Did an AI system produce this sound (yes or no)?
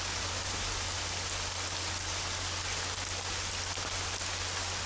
no